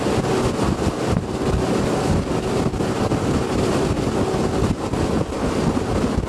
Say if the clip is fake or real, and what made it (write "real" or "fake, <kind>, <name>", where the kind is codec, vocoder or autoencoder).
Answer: real